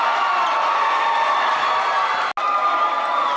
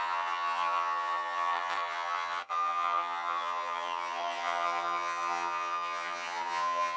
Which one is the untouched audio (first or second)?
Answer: first